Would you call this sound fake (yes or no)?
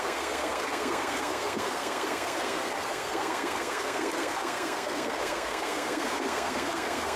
yes